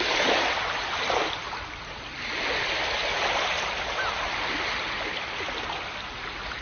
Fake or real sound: real